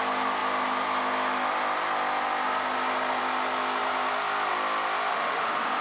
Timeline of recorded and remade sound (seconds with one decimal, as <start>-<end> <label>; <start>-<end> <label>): 0.0-5.1 recorded; 5.1-5.8 remade